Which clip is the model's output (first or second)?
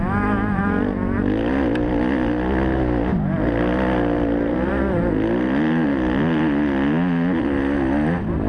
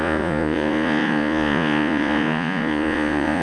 second